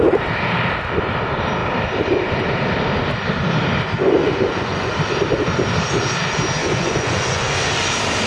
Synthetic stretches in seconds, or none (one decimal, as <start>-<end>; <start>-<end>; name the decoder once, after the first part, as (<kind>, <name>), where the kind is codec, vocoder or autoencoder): 4.2-4.9 (vocoder, Vocos); 6.6-7.7